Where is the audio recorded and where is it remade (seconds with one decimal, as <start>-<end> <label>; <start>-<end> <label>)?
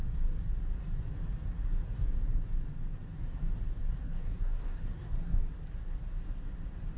0.0-4.0 recorded; 4.0-5.4 remade; 5.4-7.0 recorded